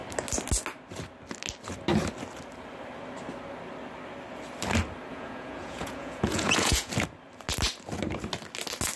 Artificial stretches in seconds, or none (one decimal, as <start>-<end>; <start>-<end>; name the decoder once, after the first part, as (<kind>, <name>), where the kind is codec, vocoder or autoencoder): 5.1-6.9 (vocoder, Vocos)